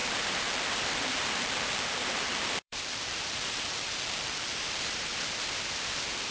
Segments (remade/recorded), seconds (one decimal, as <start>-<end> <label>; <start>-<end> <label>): 0.0-5.1 remade; 5.1-6.3 recorded